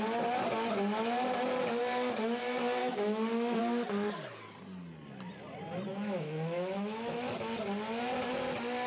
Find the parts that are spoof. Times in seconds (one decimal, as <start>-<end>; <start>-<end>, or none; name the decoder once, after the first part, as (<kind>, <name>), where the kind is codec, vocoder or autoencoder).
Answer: 2.8-3.6 (autoencoder, DAC-VAE); 5.9-7.3